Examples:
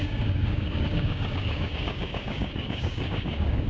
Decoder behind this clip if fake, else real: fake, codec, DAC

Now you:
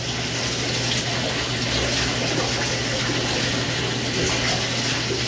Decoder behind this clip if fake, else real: real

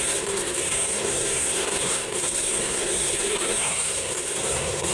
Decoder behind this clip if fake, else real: fake, codec, SNAC